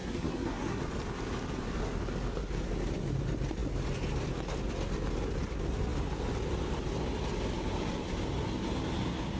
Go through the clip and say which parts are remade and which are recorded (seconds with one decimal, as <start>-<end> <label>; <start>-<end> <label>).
0.0-0.8 remade; 0.8-9.4 recorded